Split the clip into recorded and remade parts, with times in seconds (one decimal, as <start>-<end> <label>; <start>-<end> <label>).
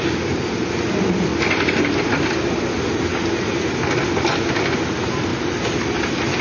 0.0-6.4 recorded